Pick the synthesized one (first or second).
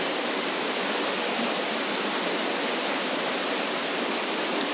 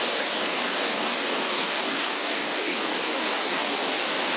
second